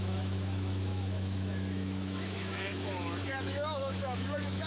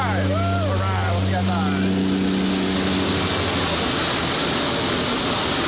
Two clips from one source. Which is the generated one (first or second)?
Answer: first